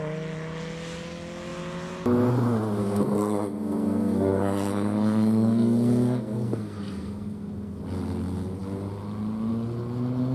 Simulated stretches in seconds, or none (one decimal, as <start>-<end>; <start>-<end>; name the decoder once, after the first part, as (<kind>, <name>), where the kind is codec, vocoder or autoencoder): 2.8-7.8 (codec, SNAC)